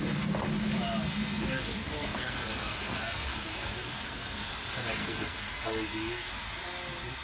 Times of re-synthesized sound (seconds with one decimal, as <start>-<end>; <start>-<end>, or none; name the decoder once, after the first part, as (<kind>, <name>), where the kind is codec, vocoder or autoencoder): 1.4-4.5 (codec, SNAC); 5.0-6.3